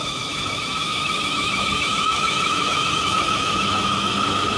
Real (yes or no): no